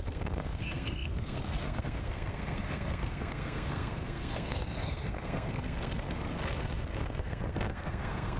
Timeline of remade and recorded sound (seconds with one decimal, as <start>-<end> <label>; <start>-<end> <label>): 0.0-8.4 remade